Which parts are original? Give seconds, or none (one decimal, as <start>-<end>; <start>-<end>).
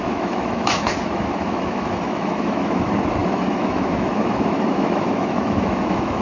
none